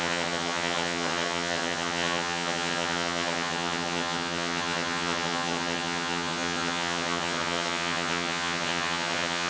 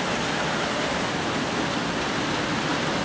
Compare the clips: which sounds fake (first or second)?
first